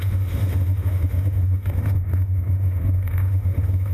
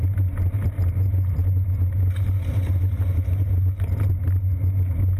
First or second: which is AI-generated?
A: first